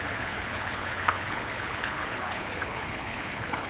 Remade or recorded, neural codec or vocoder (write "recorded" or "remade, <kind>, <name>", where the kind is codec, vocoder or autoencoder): remade, codec, HILCodec